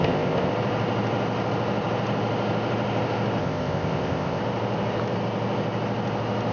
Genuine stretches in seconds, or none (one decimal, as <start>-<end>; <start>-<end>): 0.5-3.4; 4.4-6.5